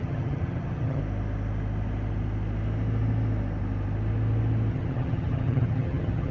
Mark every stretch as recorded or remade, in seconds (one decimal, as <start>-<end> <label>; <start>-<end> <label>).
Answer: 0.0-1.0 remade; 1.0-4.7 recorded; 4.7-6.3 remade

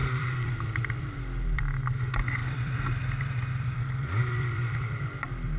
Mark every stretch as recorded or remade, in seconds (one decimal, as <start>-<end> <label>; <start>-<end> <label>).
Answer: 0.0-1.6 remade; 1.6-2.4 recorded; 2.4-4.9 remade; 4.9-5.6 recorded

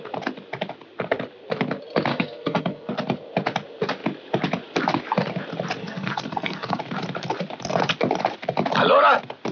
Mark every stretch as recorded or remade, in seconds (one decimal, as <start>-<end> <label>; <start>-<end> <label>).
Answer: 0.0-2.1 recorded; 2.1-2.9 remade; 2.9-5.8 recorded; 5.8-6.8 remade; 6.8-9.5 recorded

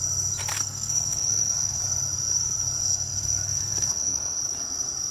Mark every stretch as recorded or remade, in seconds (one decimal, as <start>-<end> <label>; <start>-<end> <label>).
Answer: 0.0-0.5 recorded; 0.5-1.8 remade; 1.8-2.8 recorded; 2.8-4.4 remade; 4.4-5.1 recorded